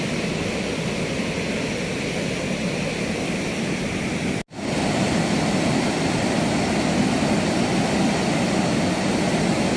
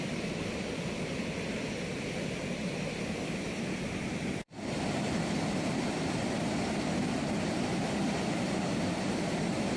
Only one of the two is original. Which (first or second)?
first